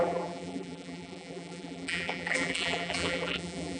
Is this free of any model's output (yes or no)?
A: no